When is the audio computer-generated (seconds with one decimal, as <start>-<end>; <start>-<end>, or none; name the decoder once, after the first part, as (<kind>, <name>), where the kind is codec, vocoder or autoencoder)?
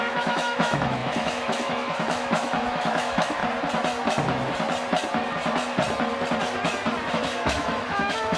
0.0-3.4 (autoencoder, DAC-VAE); 7.1-8.4